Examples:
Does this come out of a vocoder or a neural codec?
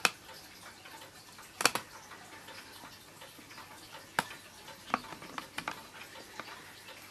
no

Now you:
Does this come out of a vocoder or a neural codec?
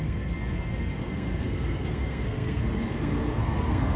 yes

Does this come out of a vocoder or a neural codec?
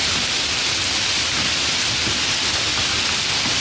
no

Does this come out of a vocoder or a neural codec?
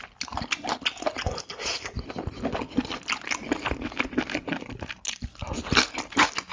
no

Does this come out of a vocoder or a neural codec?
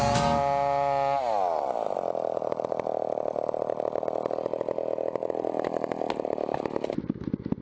no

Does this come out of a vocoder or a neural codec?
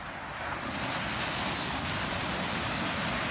no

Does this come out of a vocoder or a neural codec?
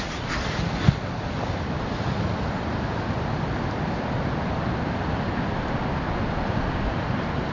no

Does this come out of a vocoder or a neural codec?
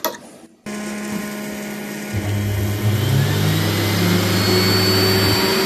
no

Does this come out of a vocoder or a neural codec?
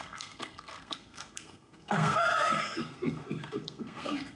yes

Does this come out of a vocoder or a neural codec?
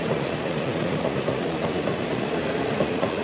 yes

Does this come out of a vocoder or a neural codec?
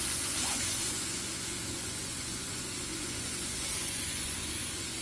yes